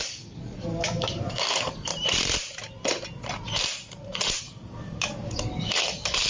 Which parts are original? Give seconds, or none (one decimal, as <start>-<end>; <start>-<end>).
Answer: 1.9-4.4